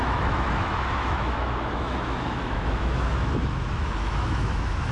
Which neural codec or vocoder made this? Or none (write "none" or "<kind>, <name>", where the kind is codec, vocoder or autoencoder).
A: autoencoder, DAC-VAE